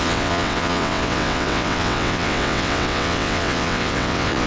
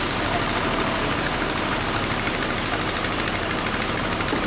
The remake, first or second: first